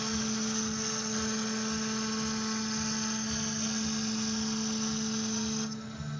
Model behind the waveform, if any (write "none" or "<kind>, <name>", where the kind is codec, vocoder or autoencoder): none